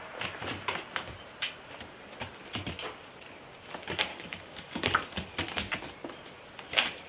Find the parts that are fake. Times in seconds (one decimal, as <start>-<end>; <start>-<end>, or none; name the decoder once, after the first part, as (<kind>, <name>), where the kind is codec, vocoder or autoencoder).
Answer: 4.1-5.0 (codec, DAC)